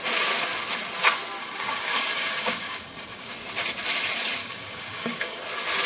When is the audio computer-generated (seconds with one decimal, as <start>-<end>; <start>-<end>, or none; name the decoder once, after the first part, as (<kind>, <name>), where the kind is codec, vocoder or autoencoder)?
1.4-3.3 (codec, DAC); 4.4-5.4